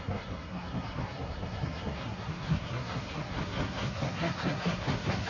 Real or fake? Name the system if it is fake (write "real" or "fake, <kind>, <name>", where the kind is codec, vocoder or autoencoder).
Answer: fake, codec, SNAC